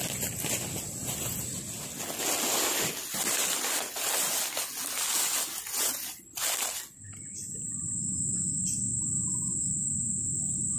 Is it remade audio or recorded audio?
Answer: recorded